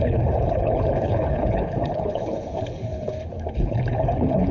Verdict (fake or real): fake